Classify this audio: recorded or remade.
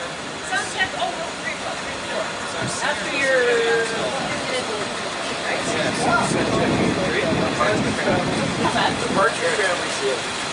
recorded